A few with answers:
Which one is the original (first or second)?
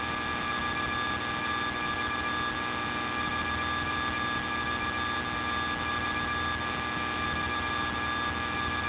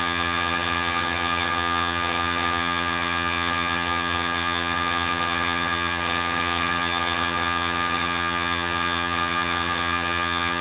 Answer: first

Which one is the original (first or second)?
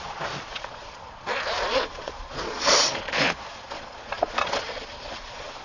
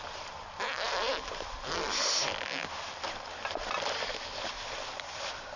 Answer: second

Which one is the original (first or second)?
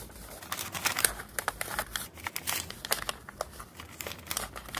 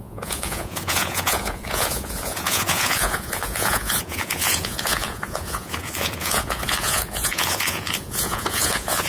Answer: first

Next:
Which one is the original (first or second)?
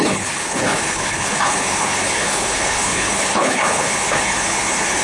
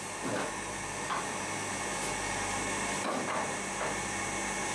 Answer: second